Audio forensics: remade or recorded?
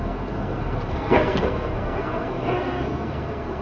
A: remade